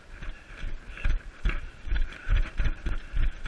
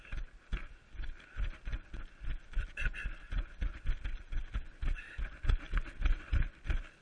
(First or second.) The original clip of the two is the second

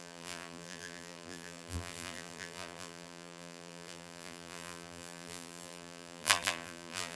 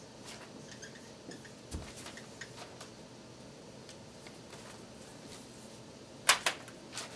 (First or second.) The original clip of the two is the second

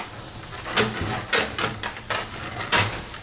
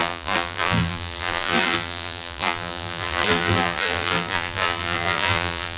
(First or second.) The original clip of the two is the first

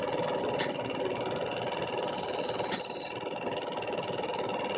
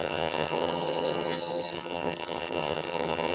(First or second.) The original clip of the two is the first